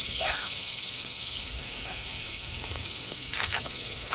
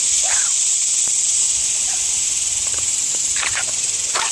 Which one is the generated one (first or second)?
first